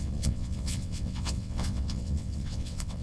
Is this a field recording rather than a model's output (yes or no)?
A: no